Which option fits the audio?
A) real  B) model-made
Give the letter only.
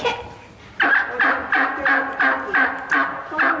A